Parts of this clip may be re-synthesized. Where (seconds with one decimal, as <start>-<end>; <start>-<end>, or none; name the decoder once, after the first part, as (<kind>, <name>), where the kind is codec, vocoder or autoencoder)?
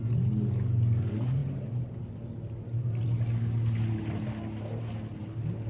none